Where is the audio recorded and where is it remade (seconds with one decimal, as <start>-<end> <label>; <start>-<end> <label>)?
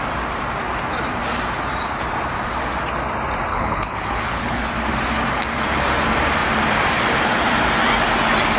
0.0-3.5 recorded; 3.5-4.7 remade; 4.7-8.6 recorded